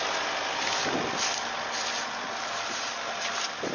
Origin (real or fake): real